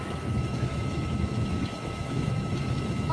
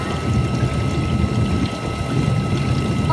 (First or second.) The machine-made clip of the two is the first